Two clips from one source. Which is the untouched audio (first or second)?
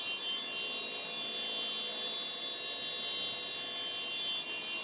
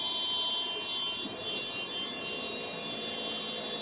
first